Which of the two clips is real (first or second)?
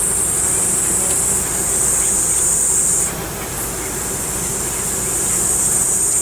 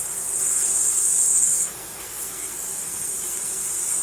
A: first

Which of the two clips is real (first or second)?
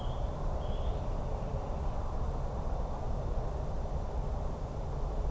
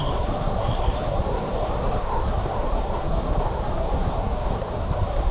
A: first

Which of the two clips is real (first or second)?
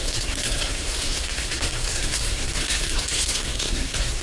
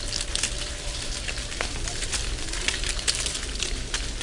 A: second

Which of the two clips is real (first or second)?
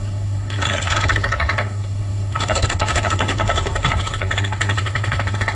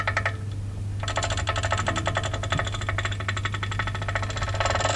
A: second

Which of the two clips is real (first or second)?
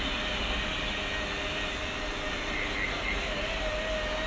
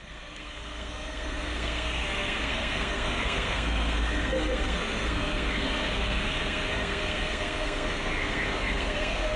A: first